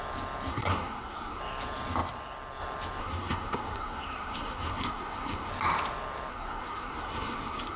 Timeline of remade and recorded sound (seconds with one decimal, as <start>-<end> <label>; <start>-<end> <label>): 0.0-0.5 recorded; 0.5-1.4 remade; 1.4-3.0 recorded; 3.0-5.5 remade; 5.5-6.3 recorded; 6.3-7.8 remade